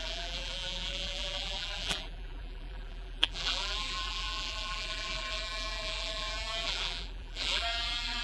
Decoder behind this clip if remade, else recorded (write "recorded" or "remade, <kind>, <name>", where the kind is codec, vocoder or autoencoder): remade, vocoder, BigVGAN v2